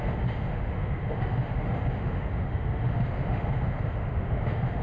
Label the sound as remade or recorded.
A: remade